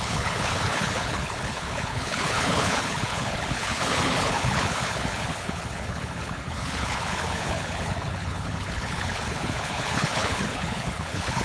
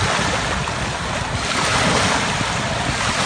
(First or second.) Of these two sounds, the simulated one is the first